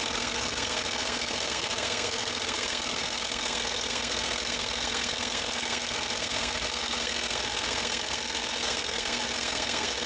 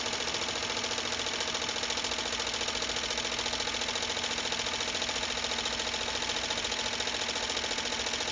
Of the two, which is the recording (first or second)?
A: second